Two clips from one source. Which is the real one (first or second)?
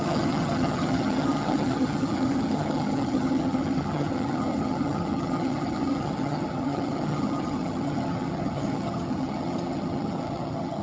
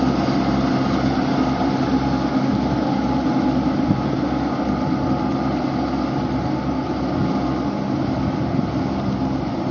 second